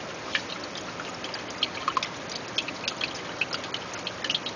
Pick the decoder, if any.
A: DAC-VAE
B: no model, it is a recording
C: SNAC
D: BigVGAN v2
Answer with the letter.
B